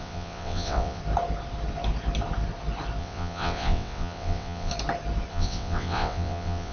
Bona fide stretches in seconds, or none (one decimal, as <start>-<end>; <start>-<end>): 1.0-3.0; 4.7-5.3